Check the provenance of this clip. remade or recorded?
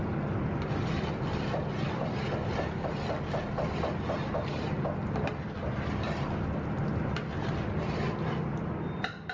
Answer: recorded